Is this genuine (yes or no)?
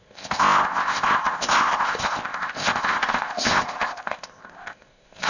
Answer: no